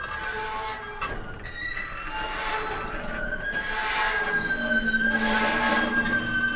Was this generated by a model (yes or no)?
no